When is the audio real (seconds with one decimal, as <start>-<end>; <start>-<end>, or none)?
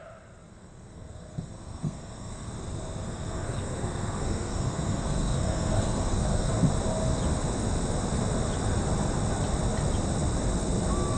0.0-0.5; 2.5-3.0; 6.5-11.2